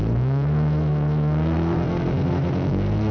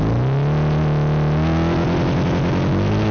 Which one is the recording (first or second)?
second